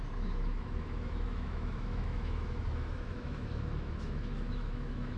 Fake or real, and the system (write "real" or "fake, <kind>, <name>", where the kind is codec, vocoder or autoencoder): fake, autoencoder, DAC-VAE